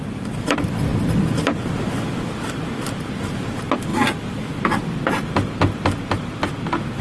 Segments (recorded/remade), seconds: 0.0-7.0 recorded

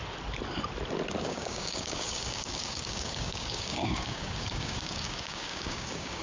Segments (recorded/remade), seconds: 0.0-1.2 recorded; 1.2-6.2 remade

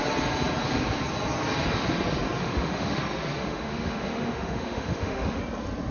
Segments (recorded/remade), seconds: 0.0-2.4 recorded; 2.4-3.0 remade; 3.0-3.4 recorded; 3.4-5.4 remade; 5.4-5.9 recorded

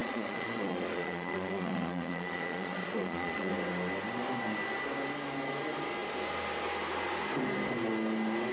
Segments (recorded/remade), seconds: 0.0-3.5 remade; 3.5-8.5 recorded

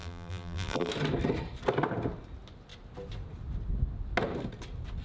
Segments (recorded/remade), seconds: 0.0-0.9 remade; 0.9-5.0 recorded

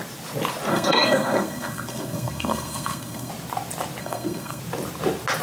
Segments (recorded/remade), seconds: 0.0-0.7 recorded; 0.7-3.3 remade; 3.3-4.0 recorded; 4.0-4.6 remade; 4.6-5.4 recorded